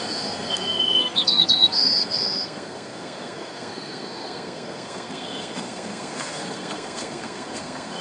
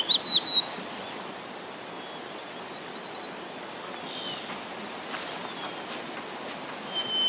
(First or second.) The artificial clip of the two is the first